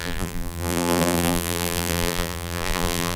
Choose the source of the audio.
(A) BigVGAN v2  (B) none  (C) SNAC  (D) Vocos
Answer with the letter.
A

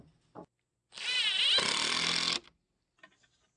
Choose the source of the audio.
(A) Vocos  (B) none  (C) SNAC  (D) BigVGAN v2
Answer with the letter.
B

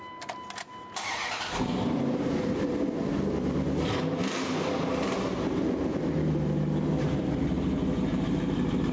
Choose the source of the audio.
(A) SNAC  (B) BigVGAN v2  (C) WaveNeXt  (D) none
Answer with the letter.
D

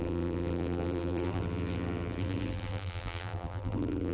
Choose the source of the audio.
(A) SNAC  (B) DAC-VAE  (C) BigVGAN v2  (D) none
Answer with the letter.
C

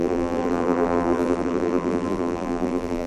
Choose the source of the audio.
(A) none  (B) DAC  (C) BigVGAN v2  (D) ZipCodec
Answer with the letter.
C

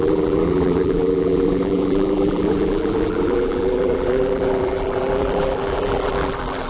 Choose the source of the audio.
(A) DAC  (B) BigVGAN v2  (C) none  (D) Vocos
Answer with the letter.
B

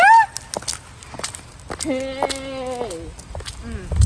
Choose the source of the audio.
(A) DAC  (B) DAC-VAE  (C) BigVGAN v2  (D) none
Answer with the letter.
D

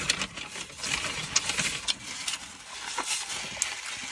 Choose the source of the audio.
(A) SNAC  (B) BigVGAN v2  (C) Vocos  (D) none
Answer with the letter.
D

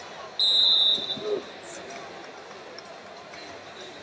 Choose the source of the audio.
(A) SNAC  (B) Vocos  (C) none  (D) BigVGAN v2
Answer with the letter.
C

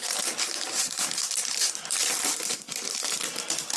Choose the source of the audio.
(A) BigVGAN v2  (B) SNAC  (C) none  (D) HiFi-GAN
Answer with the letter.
A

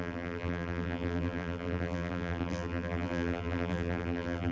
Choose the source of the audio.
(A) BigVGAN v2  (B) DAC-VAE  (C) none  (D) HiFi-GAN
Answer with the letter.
A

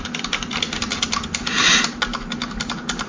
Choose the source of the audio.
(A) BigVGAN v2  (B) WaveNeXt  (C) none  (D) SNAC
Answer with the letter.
C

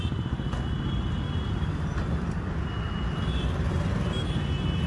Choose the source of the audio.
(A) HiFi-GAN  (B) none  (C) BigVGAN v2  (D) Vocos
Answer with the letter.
B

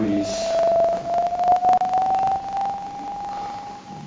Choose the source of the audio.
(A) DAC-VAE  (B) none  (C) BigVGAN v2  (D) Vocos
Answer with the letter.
B